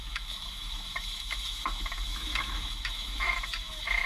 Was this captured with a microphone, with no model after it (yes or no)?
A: no